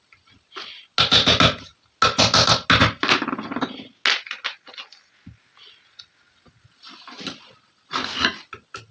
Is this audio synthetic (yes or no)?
no